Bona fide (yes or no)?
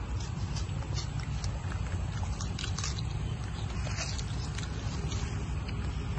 yes